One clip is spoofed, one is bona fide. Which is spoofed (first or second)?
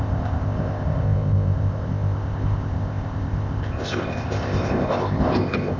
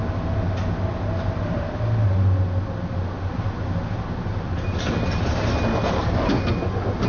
first